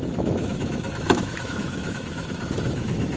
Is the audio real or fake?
fake